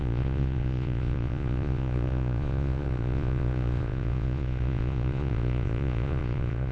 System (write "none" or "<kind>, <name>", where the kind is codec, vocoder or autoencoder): vocoder, Vocos